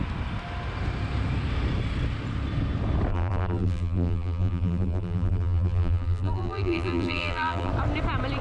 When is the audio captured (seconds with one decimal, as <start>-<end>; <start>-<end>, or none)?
0.0-3.1; 7.7-8.4